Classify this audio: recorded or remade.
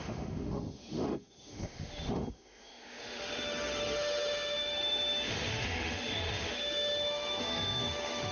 remade